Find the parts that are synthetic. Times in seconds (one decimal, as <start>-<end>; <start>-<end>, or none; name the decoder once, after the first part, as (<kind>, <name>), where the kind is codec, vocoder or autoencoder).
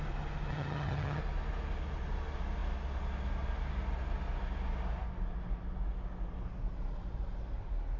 0.5-1.2 (vocoder, HiFi-GAN)